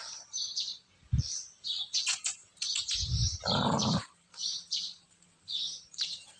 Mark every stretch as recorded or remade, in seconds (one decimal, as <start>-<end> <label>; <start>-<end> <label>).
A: 0.0-3.2 recorded; 3.2-6.4 remade